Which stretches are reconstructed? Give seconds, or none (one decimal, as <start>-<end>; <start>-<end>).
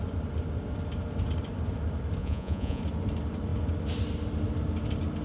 2.2-2.8